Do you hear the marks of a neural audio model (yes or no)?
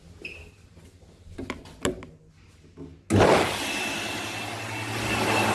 no